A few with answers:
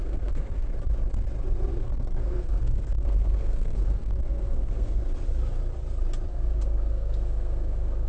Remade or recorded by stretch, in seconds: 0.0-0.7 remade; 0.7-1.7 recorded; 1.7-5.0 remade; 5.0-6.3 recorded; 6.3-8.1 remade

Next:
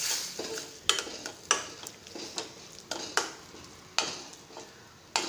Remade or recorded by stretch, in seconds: 0.0-5.3 recorded

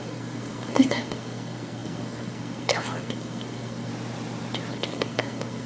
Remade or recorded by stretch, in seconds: 0.0-3.9 remade; 3.9-4.7 recorded; 4.7-5.7 remade

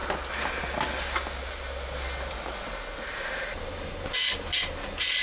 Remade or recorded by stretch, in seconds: 0.0-5.2 recorded

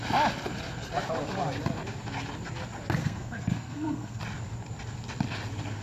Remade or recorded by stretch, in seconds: 0.0-3.0 recorded; 3.0-4.2 remade; 4.2-5.8 recorded